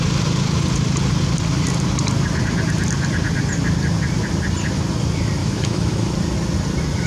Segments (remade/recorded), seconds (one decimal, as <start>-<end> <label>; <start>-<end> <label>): 0.0-5.4 recorded; 5.4-6.1 remade; 6.1-7.1 recorded